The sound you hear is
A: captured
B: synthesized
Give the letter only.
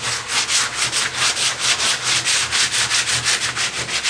A